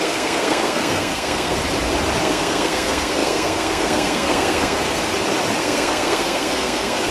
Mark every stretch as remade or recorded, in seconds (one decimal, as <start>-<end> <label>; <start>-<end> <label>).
0.0-1.6 remade; 1.6-2.2 recorded; 2.2-5.0 remade; 5.0-5.6 recorded; 5.6-7.1 remade